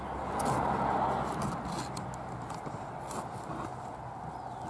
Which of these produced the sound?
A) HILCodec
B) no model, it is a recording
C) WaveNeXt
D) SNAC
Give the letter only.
B